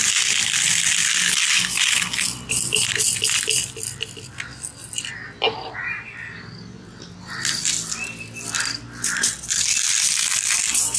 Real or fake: real